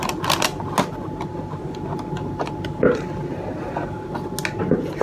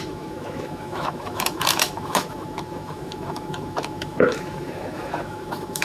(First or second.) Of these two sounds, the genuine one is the first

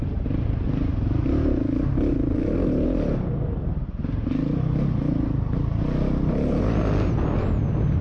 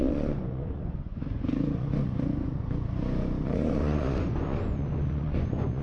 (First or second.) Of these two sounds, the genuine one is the first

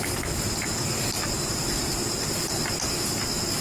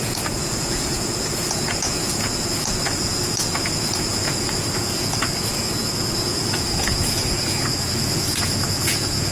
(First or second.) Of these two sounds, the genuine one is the first